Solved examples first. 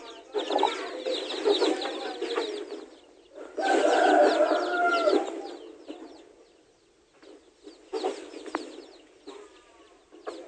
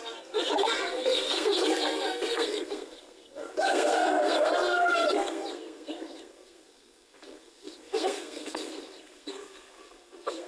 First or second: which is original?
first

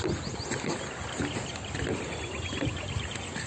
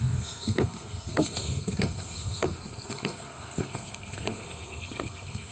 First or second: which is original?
first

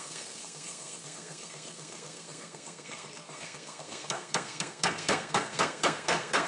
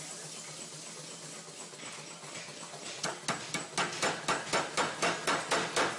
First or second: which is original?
second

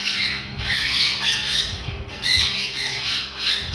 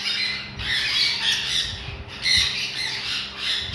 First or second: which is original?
second